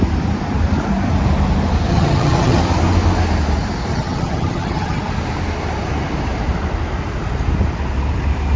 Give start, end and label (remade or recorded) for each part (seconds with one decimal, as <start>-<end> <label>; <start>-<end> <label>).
0.0-1.9 recorded; 1.9-2.6 remade; 2.6-3.9 recorded; 3.9-5.0 remade; 5.0-8.6 recorded